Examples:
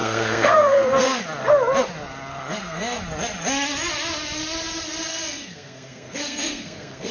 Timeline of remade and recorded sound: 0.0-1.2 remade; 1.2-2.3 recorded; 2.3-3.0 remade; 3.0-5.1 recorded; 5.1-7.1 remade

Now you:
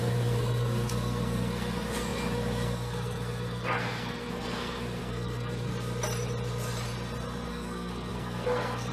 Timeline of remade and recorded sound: 0.0-5.7 remade; 5.7-7.5 recorded; 7.5-8.9 remade

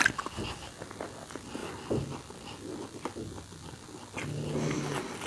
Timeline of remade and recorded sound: 0.0-5.3 recorded

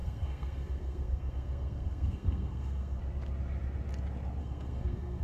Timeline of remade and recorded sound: 0.0-3.0 remade; 3.0-4.4 recorded; 4.4-5.2 remade

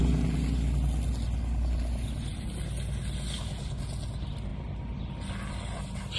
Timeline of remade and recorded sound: 0.0-6.2 recorded

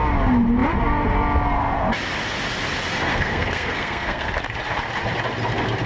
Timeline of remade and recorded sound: 0.0-3.1 recorded; 3.1-4.3 remade; 4.3-5.9 recorded

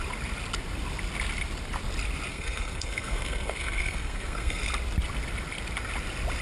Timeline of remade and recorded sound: 0.0-2.3 recorded; 2.3-4.6 remade; 4.6-6.4 recorded